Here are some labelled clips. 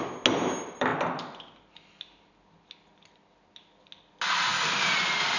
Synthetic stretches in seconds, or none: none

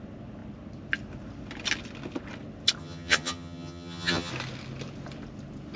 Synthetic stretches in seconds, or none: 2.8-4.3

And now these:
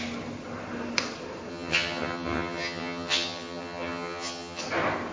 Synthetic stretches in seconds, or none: 1.5-4.6

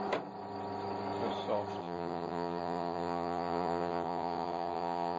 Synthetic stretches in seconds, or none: 1.8-5.2